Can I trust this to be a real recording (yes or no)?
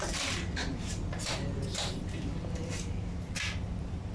yes